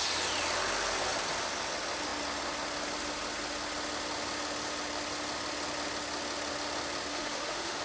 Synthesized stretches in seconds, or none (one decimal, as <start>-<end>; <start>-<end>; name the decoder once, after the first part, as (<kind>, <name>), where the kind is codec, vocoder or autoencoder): 7.1-7.8 (autoencoder, DAC-VAE)